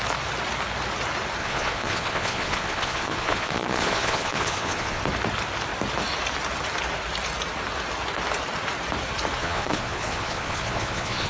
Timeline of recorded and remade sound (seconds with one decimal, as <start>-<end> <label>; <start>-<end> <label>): 0.0-1.4 recorded; 1.4-5.0 remade; 5.0-9.4 recorded; 9.4-11.3 remade